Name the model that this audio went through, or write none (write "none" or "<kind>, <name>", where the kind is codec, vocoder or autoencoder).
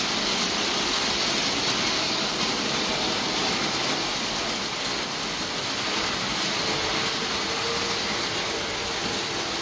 none